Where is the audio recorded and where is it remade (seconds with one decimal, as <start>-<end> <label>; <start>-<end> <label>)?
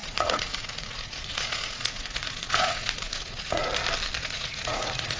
0.0-3.7 remade; 3.7-4.2 recorded; 4.2-5.2 remade